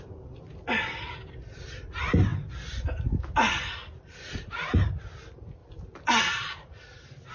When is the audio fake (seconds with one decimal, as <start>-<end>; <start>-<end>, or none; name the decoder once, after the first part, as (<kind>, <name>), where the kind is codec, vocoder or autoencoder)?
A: none